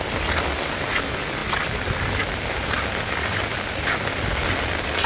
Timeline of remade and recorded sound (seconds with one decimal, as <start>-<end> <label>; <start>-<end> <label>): 0.0-5.1 recorded